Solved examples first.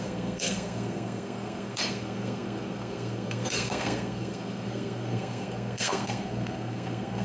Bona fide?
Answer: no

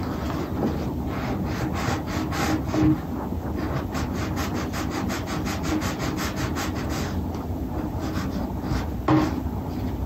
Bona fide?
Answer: yes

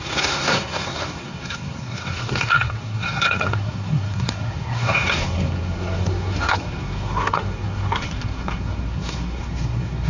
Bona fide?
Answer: no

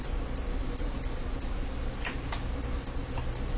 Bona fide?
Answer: yes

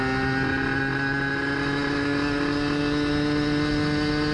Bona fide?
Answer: yes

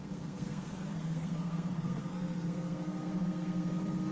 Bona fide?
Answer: no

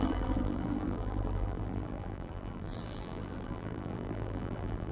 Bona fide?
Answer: no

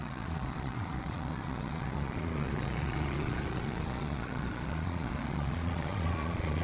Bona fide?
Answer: no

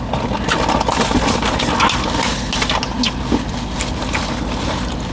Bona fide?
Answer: yes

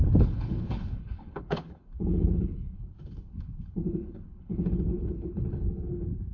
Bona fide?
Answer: no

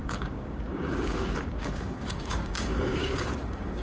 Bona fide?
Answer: no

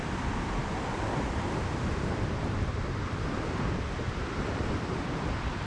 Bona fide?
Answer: no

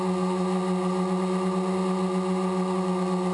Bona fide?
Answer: yes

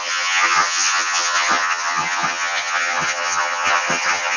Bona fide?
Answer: no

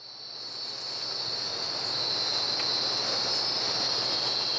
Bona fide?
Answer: yes